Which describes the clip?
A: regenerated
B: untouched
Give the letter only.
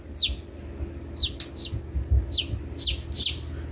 B